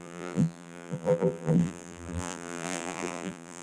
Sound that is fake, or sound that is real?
fake